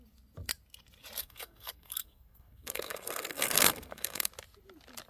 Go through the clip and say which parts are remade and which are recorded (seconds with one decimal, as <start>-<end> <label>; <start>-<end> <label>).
0.0-1.2 recorded; 1.2-4.3 remade; 4.3-5.1 recorded